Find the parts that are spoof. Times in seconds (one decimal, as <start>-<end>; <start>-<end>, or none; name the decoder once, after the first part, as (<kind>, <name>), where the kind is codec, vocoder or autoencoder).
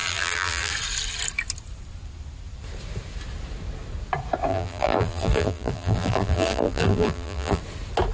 0.0-0.7 (vocoder, BigVGAN v2); 4.5-7.6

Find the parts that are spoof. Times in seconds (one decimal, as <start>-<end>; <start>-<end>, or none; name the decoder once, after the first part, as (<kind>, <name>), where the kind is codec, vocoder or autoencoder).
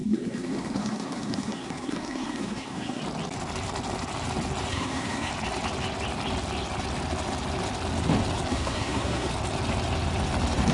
0.0-3.0 (codec, SNAC); 4.7-5.3; 8.5-9.3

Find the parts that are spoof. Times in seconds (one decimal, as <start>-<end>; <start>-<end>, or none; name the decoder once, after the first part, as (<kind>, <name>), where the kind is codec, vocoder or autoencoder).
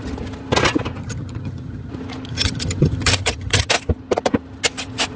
1.0-1.9 (vocoder, HiFi-GAN); 2.3-3.7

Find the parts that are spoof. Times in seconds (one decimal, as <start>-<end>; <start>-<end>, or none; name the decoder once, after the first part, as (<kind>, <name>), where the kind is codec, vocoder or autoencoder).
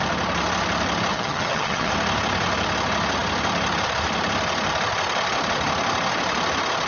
1.1-1.9 (vocoder, HiFi-GAN)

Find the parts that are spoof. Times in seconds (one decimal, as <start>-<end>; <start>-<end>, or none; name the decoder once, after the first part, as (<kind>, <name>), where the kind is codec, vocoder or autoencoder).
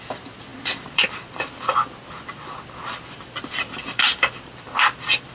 none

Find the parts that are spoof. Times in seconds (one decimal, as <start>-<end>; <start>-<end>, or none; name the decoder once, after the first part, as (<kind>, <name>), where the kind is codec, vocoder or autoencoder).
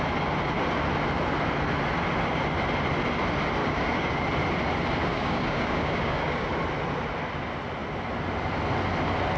3.6-4.2 (codec, DAC); 5.0-6.5